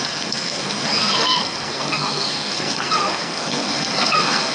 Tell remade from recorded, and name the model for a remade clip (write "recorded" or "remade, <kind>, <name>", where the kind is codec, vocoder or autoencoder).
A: remade, codec, SNAC